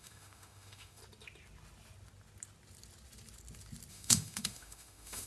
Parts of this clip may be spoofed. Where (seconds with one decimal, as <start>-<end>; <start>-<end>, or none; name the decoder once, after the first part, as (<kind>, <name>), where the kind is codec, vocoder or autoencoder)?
0.0-1.0 (autoencoder, DAC-VAE); 3.9-5.3